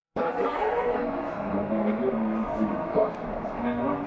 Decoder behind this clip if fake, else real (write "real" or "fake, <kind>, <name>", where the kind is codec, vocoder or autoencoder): fake, codec, SNAC